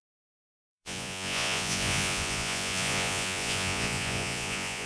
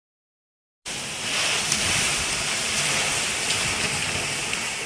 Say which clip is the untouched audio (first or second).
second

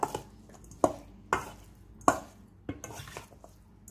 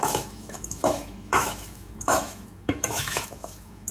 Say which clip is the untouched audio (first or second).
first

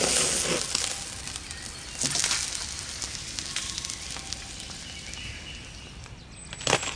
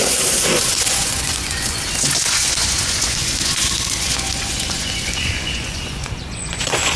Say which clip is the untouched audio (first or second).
first